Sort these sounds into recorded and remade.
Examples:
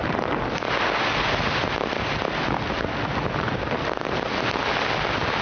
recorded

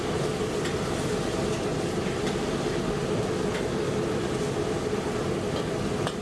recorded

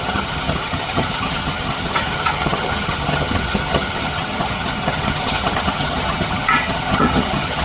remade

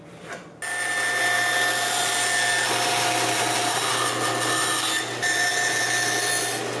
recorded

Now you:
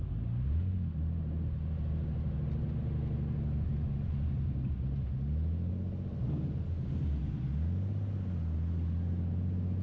recorded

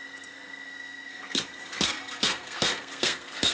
remade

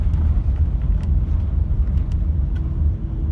recorded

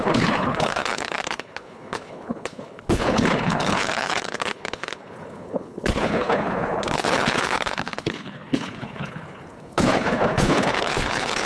remade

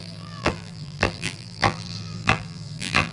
remade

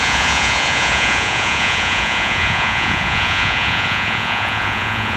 remade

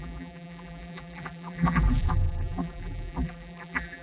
remade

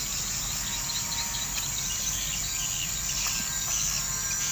recorded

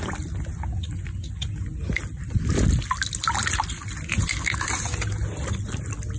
recorded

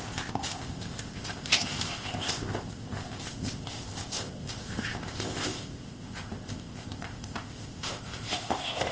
remade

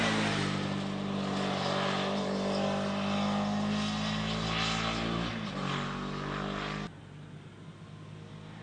recorded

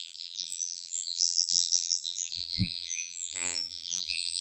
remade